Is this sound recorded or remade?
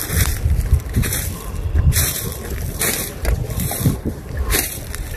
remade